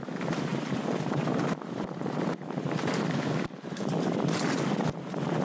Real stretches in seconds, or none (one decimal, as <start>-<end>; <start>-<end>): 0.0-0.5; 2.3-5.4